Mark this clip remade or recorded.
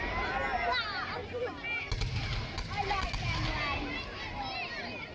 recorded